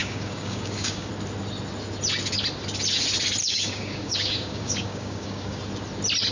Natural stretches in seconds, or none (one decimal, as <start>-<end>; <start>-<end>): 1.1-3.4; 5.6-6.3